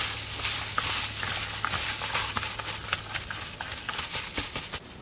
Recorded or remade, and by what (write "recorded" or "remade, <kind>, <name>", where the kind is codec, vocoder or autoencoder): recorded